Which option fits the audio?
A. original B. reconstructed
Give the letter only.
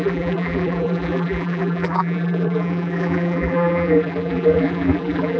B